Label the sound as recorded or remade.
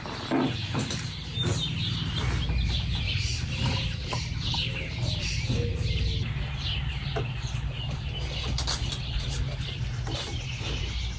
recorded